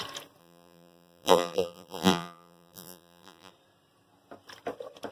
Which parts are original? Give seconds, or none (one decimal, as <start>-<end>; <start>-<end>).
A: 0.0-0.4; 3.5-5.1